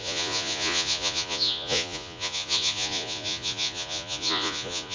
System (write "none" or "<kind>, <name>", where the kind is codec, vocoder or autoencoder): vocoder, Vocos